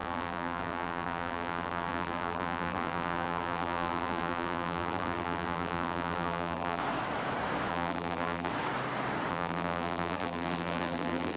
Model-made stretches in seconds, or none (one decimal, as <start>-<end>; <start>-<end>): 0.0-6.8; 7.7-8.5; 9.3-11.4

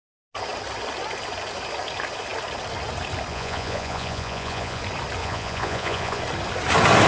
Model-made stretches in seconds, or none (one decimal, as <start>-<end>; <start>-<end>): 3.3-4.8; 5.2-6.2

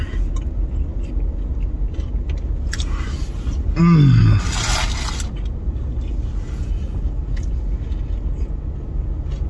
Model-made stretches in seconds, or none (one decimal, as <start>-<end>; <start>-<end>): none

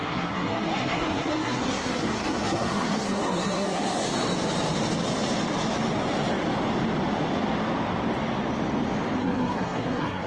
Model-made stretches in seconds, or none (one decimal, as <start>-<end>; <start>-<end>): 0.0-4.1; 9.2-10.3